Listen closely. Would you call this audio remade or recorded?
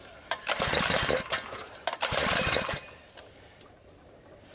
remade